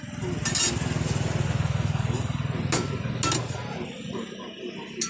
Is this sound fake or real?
real